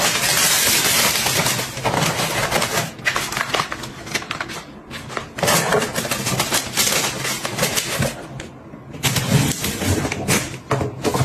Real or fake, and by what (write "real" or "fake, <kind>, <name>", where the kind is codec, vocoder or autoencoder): real